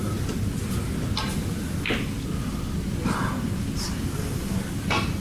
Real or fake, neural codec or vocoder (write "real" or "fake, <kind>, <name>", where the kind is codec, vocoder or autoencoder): real